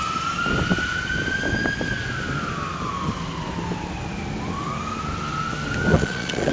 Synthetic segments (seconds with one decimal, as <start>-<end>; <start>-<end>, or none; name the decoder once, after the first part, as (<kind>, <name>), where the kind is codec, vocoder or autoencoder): 5.9-6.5 (vocoder, Vocos)